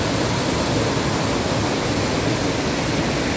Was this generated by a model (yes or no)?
no